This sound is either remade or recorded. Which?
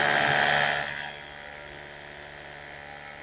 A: recorded